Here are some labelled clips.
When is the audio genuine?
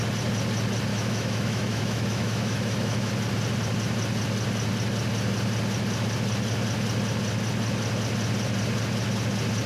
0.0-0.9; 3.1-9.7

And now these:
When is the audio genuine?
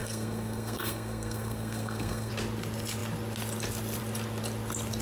2.3-5.0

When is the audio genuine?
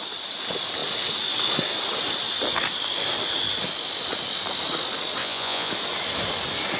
0.0-5.2; 5.7-6.8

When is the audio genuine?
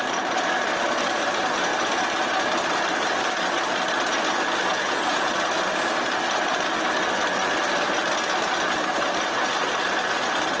0.0-4.7; 5.3-10.6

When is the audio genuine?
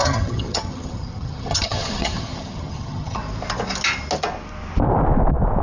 3.2-5.6